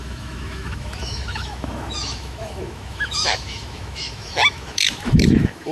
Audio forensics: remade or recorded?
remade